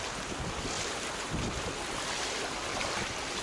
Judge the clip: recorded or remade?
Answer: recorded